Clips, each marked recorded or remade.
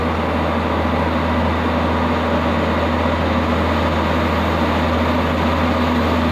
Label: recorded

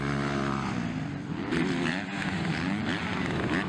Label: recorded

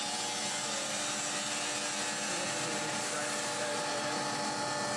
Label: recorded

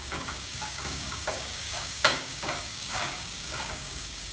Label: remade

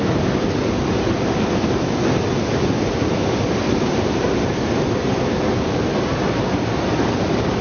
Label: recorded